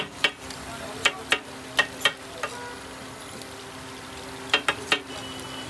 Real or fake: real